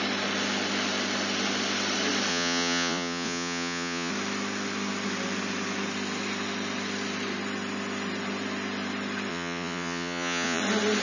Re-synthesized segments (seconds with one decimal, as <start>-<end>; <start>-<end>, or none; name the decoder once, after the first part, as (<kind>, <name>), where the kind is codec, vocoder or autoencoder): 2.3-4.1 (vocoder, Vocos); 9.3-10.6